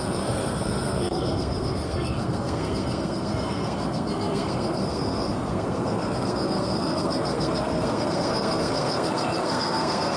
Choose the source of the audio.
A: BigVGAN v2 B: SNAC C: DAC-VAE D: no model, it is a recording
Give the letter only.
B